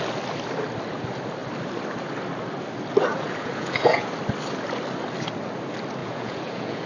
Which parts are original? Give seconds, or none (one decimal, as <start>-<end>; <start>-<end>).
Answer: 0.0-3.1; 4.1-6.0